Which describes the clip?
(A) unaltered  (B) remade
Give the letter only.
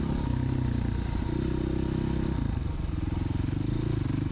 A